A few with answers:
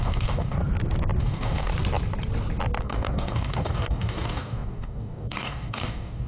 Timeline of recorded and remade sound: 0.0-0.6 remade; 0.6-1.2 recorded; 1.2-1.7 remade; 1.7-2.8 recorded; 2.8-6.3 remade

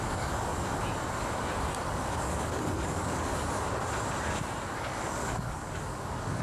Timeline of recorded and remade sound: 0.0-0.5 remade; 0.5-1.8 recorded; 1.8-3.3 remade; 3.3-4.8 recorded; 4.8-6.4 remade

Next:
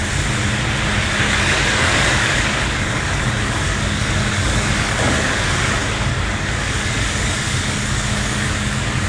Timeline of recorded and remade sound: 0.0-1.0 recorded; 1.0-9.1 remade

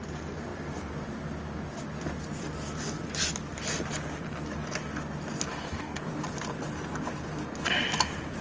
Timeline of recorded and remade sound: 0.0-5.5 recorded; 5.5-6.1 remade; 6.1-8.4 recorded

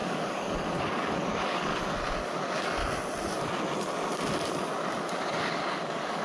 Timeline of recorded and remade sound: 0.0-1.7 remade; 1.7-2.2 recorded; 2.2-2.8 remade; 2.8-5.0 recorded; 5.0-6.2 remade

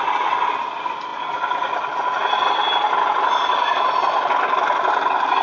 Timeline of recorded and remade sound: 0.0-5.4 recorded

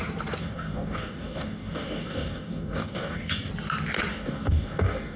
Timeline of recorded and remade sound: 0.0-0.4 recorded; 0.4-3.5 remade; 3.5-4.1 recorded; 4.1-5.2 remade